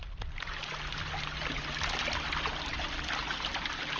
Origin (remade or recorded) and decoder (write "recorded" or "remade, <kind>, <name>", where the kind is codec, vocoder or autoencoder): recorded